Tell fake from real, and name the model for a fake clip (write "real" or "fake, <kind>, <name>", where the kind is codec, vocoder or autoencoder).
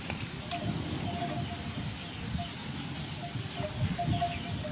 real